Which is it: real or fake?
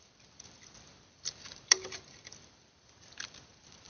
fake